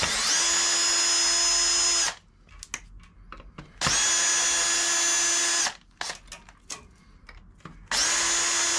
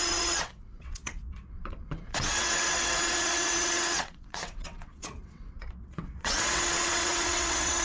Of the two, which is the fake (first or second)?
second